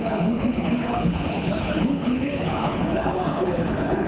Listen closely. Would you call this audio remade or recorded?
remade